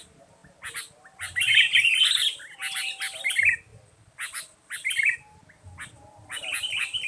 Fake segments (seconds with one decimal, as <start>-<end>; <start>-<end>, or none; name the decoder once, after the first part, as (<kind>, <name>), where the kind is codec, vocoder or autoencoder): none